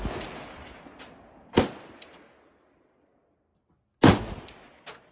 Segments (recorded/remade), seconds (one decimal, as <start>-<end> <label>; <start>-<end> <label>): 0.0-5.1 recorded